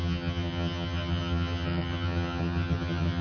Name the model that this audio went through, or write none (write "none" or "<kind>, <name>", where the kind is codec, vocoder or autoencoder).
vocoder, HiFi-GAN